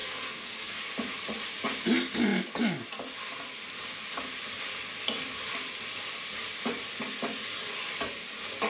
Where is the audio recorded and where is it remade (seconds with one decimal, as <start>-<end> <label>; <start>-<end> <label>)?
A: 0.0-0.8 remade; 0.8-8.7 recorded